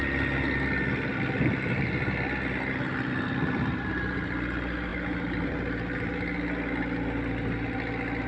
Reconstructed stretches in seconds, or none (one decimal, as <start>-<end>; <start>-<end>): none